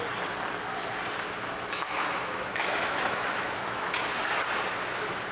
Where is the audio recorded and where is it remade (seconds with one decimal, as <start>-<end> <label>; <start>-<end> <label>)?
0.0-1.4 recorded; 1.4-4.2 remade; 4.2-5.3 recorded